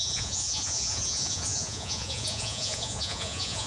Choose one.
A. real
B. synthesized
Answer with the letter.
B